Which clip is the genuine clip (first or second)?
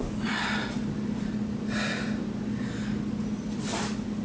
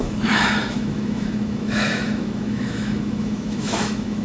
first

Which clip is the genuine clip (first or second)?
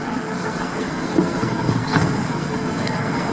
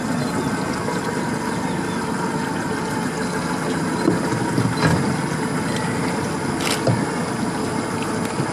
second